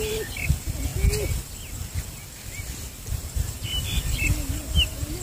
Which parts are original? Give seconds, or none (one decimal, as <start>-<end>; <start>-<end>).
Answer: 0.0-5.2